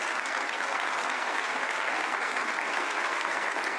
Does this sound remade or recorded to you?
remade